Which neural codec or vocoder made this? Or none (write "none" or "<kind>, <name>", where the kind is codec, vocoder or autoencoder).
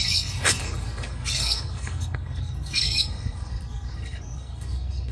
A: codec, SNAC